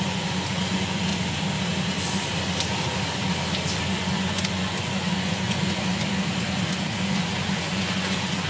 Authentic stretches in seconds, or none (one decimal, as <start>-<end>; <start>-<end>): 1.1-4.0; 5.9-6.5